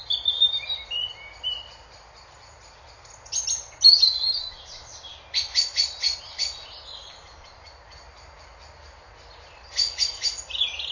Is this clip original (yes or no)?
yes